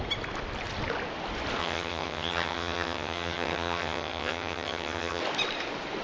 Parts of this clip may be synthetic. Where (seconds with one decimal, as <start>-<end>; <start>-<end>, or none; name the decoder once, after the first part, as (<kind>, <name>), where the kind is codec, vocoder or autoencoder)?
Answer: 1.6-5.2 (vocoder, HiFi-GAN)